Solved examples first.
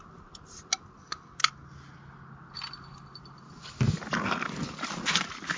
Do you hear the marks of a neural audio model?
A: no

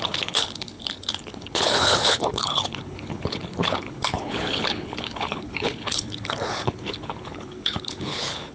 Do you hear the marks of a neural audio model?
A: yes